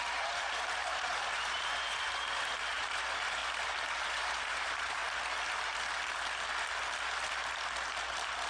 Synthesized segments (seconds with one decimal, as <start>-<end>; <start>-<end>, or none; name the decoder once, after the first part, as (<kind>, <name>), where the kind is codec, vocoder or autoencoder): 0.0-3.4 (vocoder, BigVGAN v2); 4.0-5.0